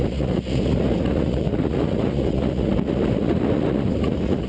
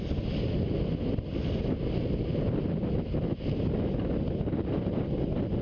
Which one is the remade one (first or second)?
first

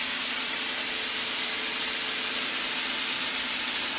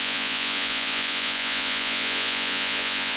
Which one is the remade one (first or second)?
second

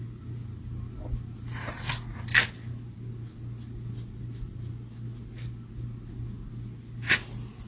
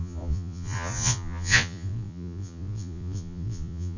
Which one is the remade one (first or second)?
second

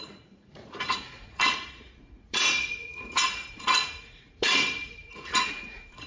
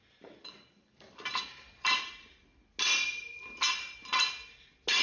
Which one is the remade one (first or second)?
first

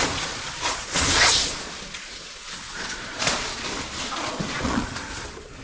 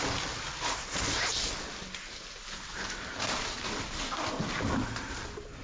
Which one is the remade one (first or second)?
first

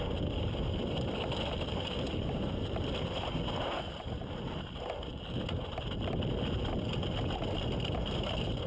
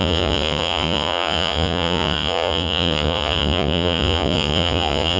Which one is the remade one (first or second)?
second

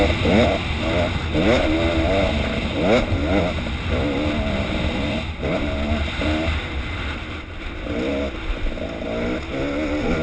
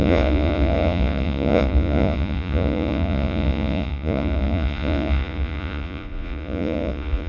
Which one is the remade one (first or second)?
second